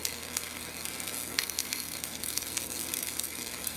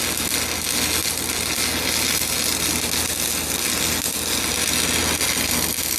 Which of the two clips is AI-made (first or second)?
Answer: first